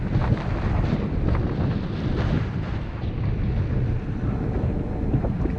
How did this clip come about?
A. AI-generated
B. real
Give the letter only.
B